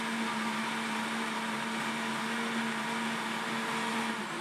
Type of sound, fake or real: real